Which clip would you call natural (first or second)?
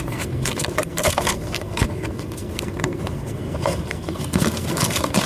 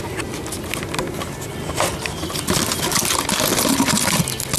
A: second